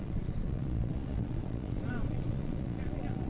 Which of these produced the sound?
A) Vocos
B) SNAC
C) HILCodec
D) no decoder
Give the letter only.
A